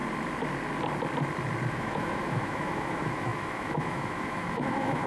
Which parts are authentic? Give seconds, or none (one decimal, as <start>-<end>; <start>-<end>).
0.0-1.7